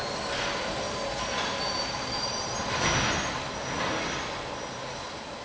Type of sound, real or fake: real